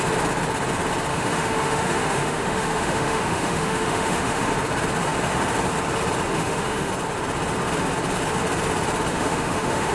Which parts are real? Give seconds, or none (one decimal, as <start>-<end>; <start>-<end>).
0.0-1.1; 4.5-6.3; 6.9-9.1